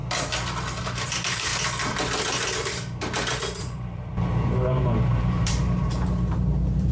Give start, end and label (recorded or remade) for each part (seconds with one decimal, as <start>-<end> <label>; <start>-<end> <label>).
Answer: 0.0-0.8 recorded; 0.8-1.5 remade; 1.5-3.6 recorded; 3.6-6.9 remade